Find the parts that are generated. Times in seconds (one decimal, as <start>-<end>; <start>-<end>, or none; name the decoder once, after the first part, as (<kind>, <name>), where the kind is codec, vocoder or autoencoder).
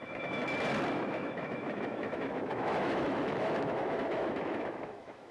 0.0-0.4 (autoencoder, DAC-VAE); 0.9-5.3